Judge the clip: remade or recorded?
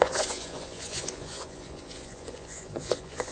remade